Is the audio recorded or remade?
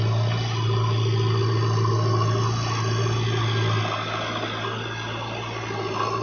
recorded